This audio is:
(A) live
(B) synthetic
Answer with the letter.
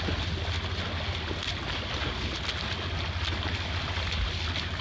A